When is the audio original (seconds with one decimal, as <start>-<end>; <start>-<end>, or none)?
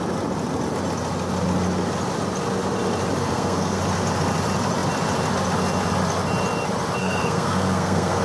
0.0-3.2; 3.8-7.0